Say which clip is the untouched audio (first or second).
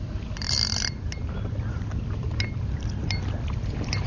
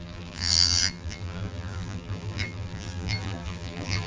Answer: first